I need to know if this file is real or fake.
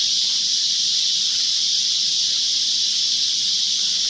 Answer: real